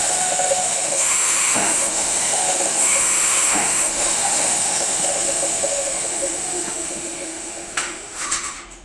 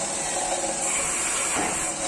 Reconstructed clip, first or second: first